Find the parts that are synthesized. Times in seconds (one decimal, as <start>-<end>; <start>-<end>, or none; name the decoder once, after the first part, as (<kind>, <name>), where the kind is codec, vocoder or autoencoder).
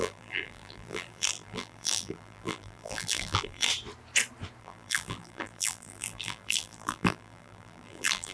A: 0.0-3.7 (vocoder, BigVGAN v2); 4.6-8.3